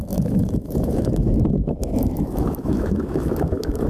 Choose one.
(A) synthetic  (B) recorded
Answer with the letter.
A